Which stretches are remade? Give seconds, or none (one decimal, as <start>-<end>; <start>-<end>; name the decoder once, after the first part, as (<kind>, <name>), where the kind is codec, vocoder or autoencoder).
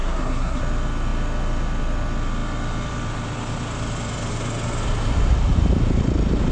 0.0-0.6 (codec, SNAC)